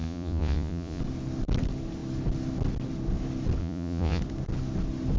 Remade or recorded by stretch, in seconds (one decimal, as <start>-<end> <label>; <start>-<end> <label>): 0.0-1.0 remade; 1.0-3.6 recorded; 3.6-4.2 remade; 4.2-5.2 recorded